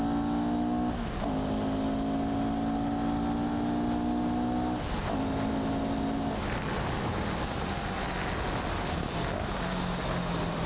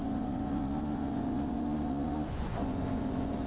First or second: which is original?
first